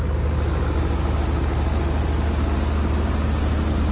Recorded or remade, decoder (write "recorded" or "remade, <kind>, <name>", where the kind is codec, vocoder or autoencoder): recorded